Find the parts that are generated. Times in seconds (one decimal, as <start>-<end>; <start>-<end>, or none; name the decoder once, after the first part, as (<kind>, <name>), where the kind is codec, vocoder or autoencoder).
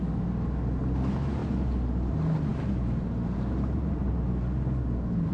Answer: 2.5-4.1 (vocoder, BigVGAN v2)